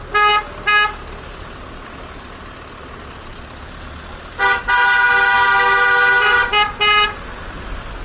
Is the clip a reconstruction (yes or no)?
no